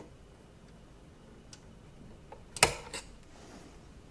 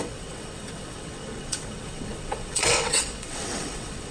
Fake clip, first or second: second